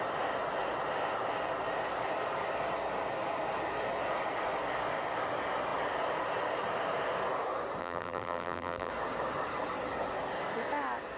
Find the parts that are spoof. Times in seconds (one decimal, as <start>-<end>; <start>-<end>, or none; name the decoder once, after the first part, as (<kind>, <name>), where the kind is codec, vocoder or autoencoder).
7.8-8.9 (vocoder, BigVGAN v2)